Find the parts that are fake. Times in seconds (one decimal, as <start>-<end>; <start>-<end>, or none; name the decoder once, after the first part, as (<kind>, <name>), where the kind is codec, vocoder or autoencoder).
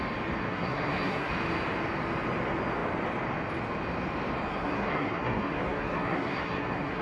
0.4-1.3 (codec, SNAC); 4.5-7.0